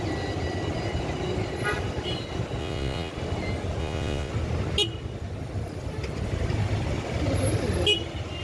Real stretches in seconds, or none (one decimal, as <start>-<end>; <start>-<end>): 0.0-2.6; 3.1-3.8; 4.3-8.4